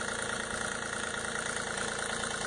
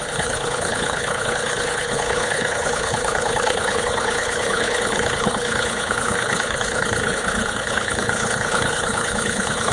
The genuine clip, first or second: first